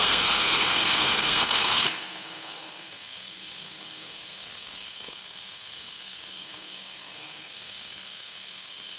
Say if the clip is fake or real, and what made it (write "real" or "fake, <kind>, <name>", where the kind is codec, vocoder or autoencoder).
fake, codec, SNAC